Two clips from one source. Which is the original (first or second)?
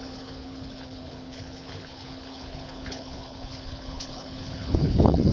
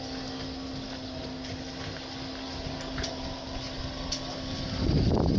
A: second